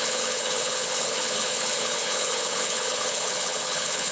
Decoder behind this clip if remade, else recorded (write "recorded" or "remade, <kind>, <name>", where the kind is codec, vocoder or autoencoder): remade, codec, HILCodec